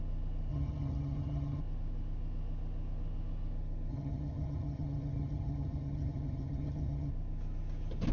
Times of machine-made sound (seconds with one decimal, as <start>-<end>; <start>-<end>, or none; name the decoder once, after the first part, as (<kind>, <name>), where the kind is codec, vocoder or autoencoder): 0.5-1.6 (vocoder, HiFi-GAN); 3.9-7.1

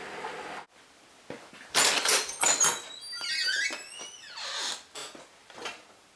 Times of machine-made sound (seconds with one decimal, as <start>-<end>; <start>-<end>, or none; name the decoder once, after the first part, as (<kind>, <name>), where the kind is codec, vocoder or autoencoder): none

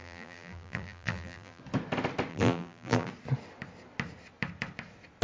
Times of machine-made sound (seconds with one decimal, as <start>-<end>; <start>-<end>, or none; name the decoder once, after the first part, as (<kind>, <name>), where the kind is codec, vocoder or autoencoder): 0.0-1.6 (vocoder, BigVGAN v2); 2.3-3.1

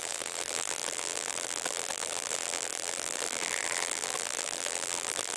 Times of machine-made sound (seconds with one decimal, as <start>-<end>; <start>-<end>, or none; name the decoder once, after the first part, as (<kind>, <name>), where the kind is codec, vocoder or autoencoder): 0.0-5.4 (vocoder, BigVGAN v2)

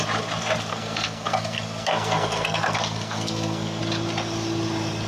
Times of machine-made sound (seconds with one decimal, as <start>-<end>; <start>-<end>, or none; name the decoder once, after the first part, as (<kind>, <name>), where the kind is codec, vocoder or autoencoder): 0.7-3.8 (codec, SNAC)